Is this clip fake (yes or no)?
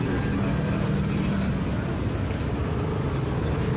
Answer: no